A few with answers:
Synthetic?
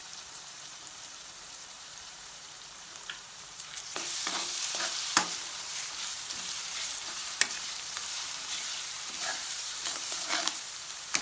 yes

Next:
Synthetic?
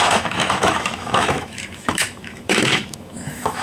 yes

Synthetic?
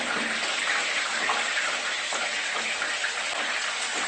no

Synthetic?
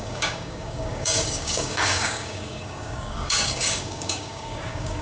yes